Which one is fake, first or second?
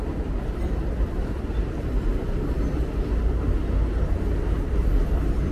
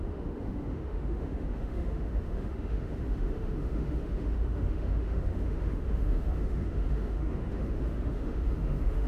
second